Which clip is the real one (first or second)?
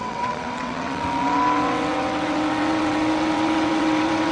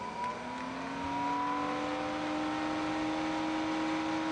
second